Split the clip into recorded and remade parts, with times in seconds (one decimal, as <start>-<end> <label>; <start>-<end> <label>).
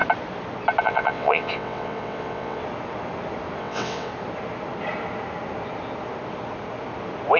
0.0-0.8 recorded; 0.8-2.6 remade; 2.6-3.6 recorded; 3.6-4.1 remade; 4.1-7.4 recorded